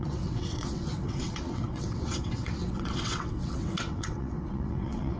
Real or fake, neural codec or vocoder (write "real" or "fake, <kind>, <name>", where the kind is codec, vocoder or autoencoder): fake, vocoder, WaveNeXt